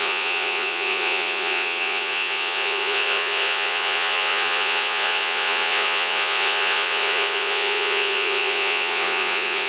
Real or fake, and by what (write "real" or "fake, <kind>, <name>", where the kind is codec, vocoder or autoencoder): fake, vocoder, Vocos